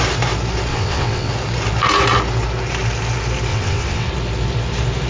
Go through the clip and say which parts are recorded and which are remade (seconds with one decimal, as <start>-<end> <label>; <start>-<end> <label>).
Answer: 0.0-0.7 recorded; 0.7-1.3 remade; 1.3-3.5 recorded; 3.5-4.1 remade; 4.1-5.1 recorded